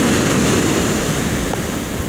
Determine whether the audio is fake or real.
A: real